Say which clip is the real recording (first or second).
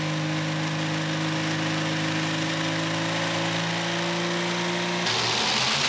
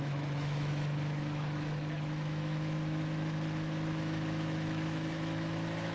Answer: first